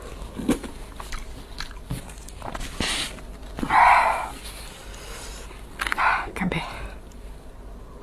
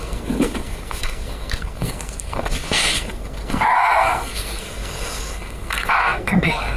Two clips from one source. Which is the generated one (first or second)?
second